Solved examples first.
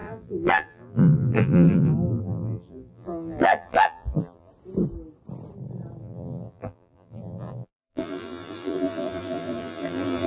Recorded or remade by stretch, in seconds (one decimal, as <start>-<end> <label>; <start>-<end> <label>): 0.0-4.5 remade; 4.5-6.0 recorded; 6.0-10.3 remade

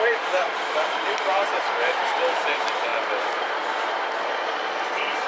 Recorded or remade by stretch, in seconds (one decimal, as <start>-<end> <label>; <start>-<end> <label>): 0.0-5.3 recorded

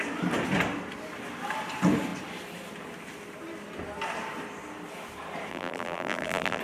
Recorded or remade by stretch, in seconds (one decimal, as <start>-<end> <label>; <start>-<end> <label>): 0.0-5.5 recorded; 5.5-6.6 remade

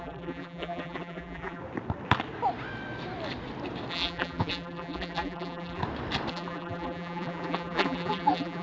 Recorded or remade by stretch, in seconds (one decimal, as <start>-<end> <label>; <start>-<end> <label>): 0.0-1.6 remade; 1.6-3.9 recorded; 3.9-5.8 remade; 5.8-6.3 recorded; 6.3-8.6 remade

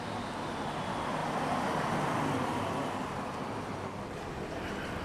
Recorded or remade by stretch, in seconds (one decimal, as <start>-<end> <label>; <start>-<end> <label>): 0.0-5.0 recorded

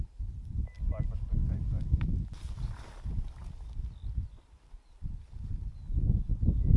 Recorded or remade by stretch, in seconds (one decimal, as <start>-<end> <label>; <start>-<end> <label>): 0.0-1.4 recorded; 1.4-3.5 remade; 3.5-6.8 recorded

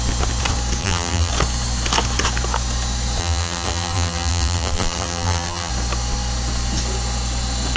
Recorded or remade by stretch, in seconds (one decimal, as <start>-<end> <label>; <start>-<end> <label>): 0.0-0.8 recorded; 0.8-1.3 remade; 1.3-3.2 recorded; 3.2-5.7 remade; 5.7-7.8 recorded

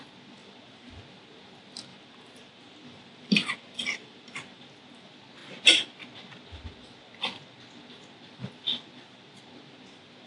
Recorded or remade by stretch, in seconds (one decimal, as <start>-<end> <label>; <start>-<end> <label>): 0.0-0.4 recorded; 0.4-0.9 remade; 0.9-1.9 recorded; 1.9-4.6 remade; 4.6-10.3 recorded